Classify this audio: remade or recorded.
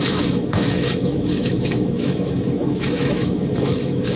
remade